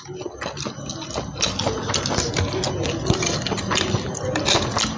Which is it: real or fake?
real